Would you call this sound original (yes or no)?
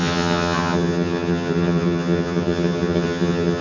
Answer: no